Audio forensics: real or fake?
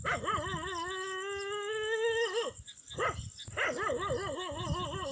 real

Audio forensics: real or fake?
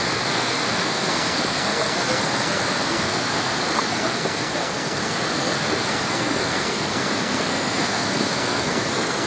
fake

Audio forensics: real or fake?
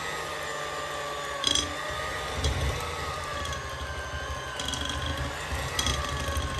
real